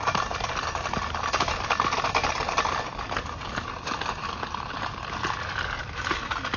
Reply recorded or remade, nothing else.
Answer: recorded